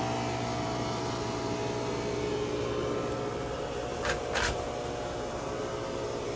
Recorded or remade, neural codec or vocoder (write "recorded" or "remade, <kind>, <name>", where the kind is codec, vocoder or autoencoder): recorded